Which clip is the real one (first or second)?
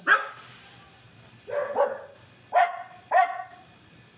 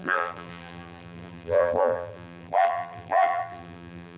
first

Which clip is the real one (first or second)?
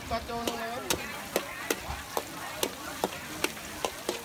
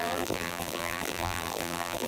first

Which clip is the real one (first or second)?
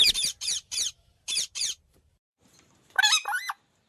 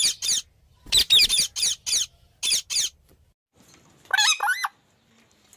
second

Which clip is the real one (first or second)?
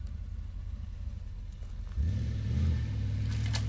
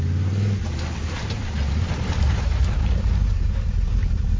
first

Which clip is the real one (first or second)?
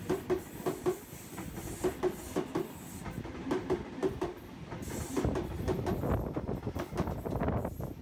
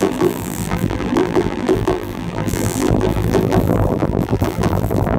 first